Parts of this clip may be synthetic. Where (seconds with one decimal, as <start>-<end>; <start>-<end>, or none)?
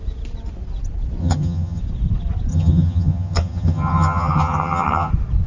1.2-1.8; 2.5-5.1